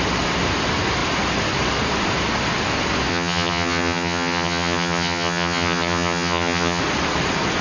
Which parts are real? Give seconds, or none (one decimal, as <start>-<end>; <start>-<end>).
0.0-3.1; 6.8-7.6